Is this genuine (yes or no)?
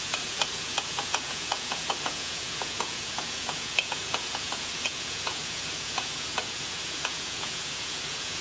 no